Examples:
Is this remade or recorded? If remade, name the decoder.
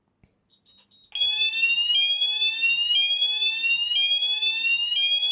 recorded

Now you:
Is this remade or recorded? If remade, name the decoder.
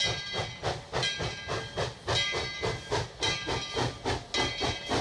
recorded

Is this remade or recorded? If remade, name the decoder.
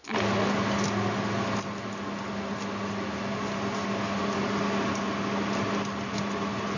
recorded